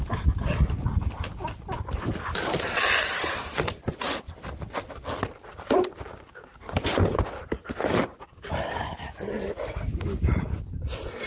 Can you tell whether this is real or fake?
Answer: real